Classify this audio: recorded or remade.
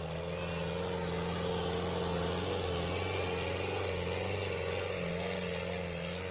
recorded